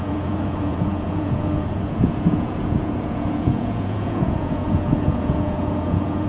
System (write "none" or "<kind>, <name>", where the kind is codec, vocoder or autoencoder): vocoder, Vocos